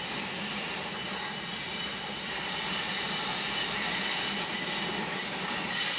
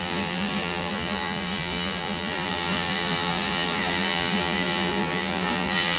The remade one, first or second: second